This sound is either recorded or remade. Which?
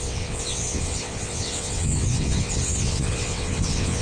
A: remade